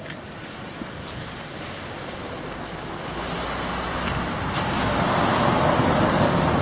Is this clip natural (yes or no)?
yes